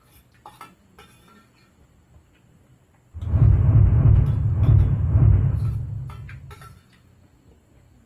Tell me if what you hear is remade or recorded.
recorded